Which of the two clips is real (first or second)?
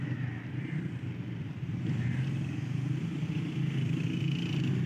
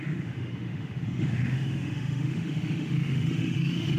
first